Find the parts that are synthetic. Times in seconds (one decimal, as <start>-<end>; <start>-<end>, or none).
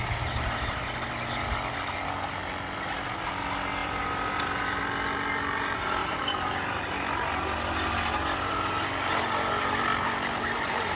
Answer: 0.0-0.8; 3.8-4.8; 6.0-6.7